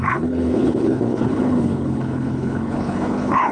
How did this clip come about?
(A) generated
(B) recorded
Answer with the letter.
A